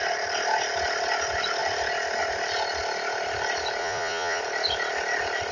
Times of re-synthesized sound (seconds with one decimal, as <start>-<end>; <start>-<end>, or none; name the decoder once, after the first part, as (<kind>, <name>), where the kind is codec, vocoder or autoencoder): 3.8-4.4 (vocoder, Vocos)